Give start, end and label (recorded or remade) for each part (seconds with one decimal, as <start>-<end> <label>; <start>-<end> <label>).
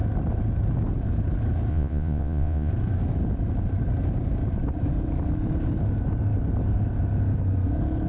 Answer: 0.0-1.7 recorded; 1.7-2.7 remade; 2.7-8.1 recorded